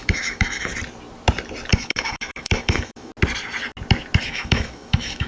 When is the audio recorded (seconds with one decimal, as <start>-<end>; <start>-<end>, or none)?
0.7-1.7; 3.1-4.3

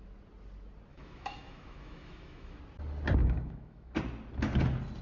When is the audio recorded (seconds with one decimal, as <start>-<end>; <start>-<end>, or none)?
0.0-0.9; 2.6-3.2; 3.9-5.0

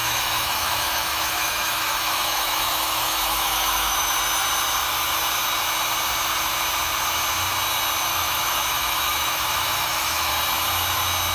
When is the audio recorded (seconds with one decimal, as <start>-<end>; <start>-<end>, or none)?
4.1-8.1; 10.3-11.3

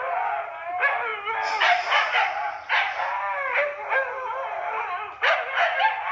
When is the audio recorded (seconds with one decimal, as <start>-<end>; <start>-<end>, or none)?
0.0-6.1

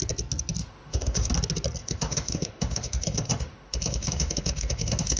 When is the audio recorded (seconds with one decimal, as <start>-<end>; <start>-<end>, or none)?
0.0-0.6; 1.3-1.8

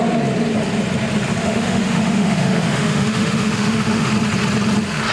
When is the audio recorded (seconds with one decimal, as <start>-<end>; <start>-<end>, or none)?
0.0-1.4; 4.1-5.1